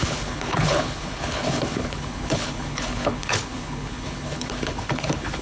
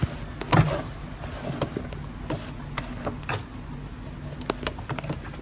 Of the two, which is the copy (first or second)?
first